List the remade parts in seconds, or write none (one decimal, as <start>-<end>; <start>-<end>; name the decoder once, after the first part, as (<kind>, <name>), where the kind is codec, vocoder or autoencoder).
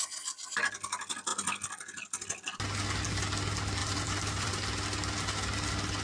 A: 3.8-4.5 (vocoder, BigVGAN v2)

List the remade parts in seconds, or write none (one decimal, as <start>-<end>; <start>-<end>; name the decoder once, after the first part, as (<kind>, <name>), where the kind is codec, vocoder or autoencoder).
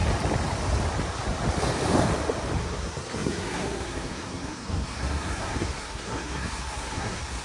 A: 2.6-7.4 (codec, SNAC)